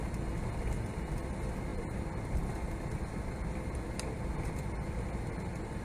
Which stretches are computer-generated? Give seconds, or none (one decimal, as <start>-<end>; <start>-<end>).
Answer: none